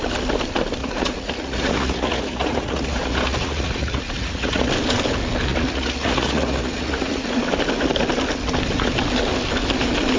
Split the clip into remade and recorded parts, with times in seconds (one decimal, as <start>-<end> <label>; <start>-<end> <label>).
0.0-0.8 recorded; 0.8-4.7 remade; 4.7-5.5 recorded; 5.5-7.4 remade; 7.4-10.2 recorded